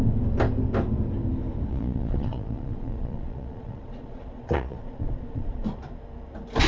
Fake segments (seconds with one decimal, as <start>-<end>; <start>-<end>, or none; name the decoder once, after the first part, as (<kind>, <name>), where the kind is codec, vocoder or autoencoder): 1.7-5.6 (vocoder, Vocos)